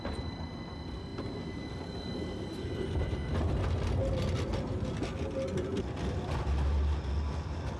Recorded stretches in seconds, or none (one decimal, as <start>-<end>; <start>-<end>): 0.0-7.8